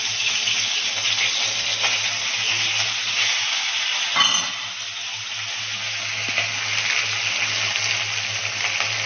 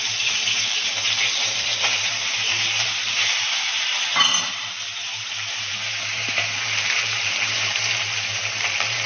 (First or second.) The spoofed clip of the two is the second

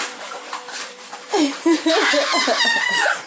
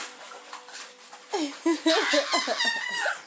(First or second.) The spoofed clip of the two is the first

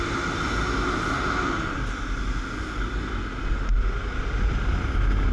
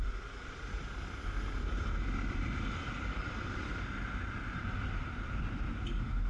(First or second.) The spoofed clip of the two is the second